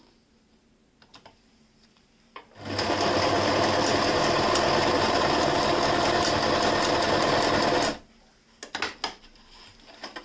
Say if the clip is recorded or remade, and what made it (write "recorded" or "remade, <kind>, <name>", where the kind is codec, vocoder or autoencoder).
recorded